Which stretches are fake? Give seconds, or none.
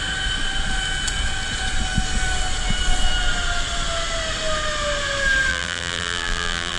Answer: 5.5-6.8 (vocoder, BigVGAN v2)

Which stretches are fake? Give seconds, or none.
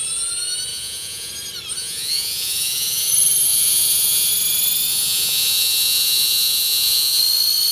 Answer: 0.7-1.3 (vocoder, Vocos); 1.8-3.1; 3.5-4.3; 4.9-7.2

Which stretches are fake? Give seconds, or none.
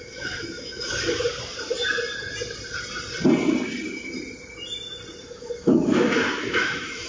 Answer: 0.0-0.9 (autoencoder, DAC-VAE); 5.2-7.1